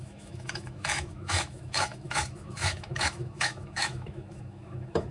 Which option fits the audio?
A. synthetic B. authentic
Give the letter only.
A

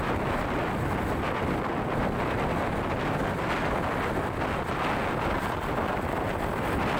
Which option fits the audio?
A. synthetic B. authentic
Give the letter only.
B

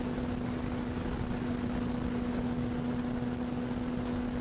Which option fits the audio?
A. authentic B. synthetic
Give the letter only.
A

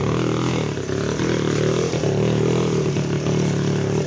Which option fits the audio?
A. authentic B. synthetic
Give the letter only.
A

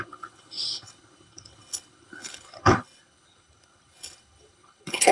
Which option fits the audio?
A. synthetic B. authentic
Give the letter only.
A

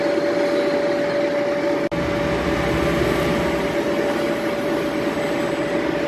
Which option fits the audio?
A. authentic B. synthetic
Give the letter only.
A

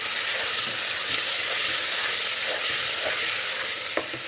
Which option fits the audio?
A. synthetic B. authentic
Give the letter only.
B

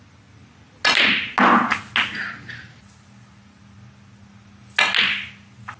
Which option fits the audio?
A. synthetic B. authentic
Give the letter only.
B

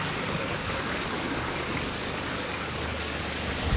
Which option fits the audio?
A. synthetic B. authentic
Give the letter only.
A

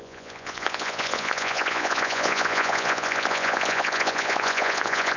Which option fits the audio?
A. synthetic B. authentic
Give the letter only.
A